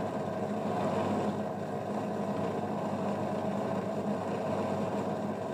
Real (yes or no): yes